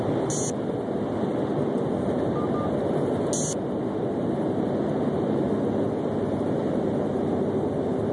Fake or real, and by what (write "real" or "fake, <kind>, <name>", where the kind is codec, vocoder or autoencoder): real